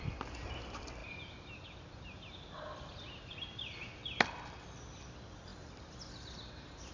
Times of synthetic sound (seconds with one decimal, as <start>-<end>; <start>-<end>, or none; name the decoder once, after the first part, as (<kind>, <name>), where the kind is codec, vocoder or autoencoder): none